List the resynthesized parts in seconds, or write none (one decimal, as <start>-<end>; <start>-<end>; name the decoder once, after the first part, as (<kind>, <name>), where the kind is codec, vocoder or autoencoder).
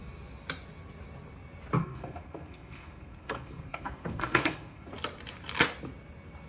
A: 1.8-4.9 (codec, SNAC)